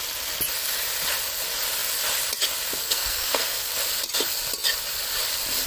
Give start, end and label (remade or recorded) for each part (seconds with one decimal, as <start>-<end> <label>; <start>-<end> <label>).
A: 0.0-2.8 recorded; 2.8-3.7 remade; 3.7-5.7 recorded